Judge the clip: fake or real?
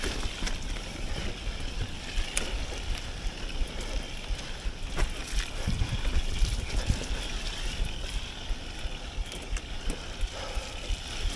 real